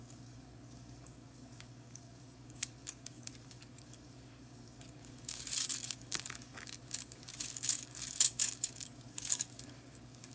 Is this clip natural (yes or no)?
no